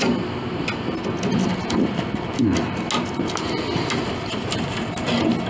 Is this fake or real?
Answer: real